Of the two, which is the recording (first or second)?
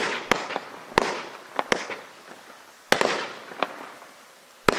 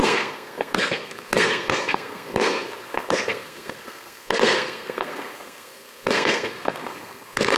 first